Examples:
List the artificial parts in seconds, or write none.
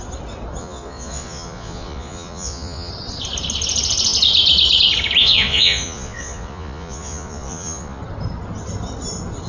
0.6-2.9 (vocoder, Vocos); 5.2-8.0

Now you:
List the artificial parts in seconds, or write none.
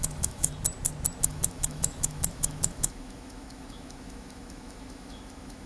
0.0-0.5 (autoencoder, DAC-VAE); 1.2-5.7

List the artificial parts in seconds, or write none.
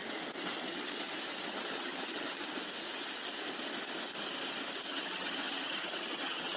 0.7-1.1 (vocoder, HiFi-GAN); 1.7-2.4; 4.9-6.6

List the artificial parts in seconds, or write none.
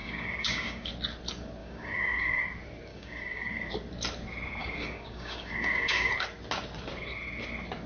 0.0-0.9 (codec, DAC); 1.6-2.4; 2.9-3.7; 4.6-6.1